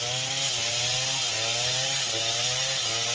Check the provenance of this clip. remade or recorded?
recorded